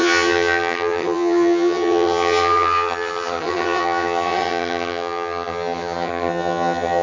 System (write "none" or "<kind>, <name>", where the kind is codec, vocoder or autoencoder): vocoder, HiFi-GAN